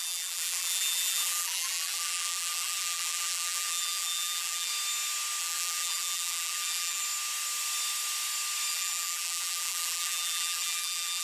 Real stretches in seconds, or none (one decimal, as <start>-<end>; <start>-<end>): 4.7-5.4; 7.0-8.7